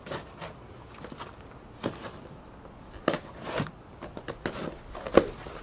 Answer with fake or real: real